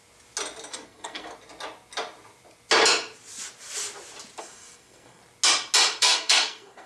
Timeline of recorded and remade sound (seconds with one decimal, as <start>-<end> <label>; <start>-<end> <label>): 0.0-0.7 recorded; 0.7-1.3 remade; 1.3-4.4 recorded; 4.4-5.2 remade; 5.2-6.0 recorded; 6.0-6.9 remade